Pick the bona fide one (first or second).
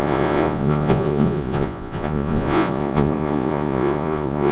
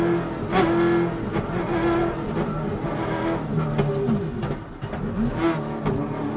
second